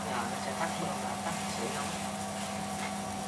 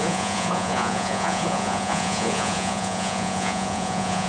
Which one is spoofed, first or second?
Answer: second